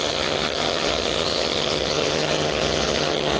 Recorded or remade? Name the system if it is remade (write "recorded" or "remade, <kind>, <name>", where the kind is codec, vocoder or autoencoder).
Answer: remade, vocoder, HiFi-GAN